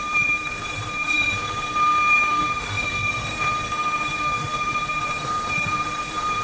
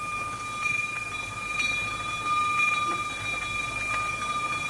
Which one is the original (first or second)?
second